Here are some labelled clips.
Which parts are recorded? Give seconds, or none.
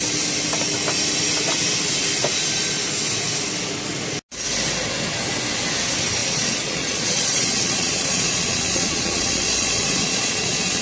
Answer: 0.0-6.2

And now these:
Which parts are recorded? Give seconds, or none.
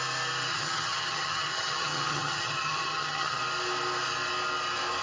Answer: 0.0-0.5; 3.4-5.0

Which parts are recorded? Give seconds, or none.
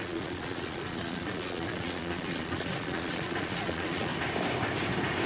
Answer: 4.1-5.3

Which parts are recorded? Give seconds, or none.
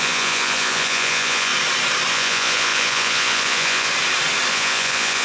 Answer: 1.5-2.1; 3.9-4.5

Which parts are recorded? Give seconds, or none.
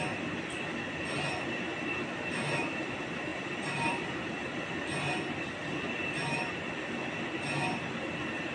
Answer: 0.0-3.3; 4.7-8.5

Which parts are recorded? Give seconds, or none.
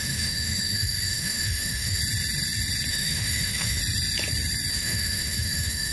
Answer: 2.0-2.9; 3.8-4.7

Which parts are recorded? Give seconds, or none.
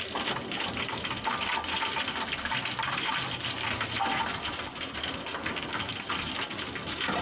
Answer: none